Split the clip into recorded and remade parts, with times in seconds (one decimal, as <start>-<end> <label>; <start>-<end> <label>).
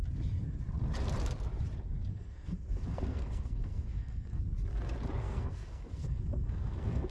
0.0-2.1 recorded; 2.1-4.4 remade; 4.4-5.2 recorded; 5.2-7.1 remade